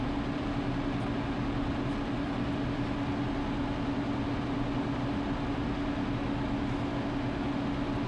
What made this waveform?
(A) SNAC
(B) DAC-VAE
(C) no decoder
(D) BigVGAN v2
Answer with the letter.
C